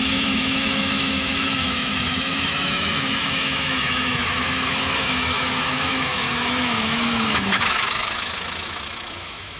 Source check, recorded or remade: remade